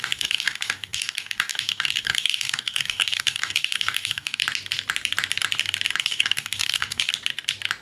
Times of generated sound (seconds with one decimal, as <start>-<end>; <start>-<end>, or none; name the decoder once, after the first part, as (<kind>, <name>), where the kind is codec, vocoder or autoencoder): 0.0-4.4 (codec, DAC); 6.0-7.1